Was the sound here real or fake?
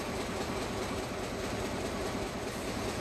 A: fake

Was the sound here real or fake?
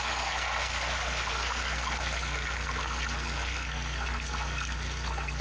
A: fake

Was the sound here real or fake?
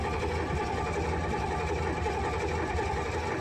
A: real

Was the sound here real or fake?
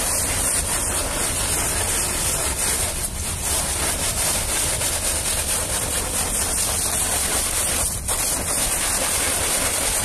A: real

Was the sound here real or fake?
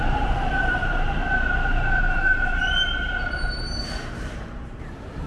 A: fake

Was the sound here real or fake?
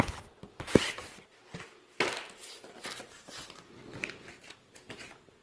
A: real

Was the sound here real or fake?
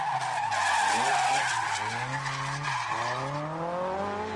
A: real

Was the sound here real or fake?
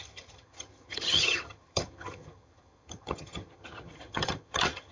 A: fake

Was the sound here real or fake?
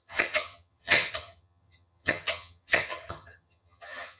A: fake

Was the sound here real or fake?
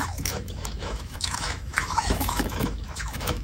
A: fake